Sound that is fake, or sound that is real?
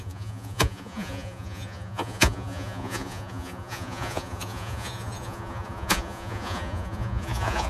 fake